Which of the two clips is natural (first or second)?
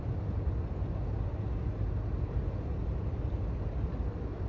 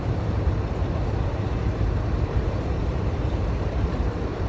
first